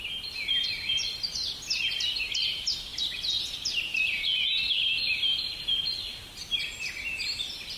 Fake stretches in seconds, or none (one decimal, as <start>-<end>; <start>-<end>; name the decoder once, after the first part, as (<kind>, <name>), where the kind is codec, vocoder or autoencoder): 6.1-7.8 (vocoder, BigVGAN v2)